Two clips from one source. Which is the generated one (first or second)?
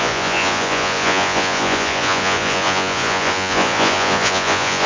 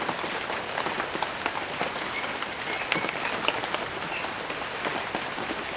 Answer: first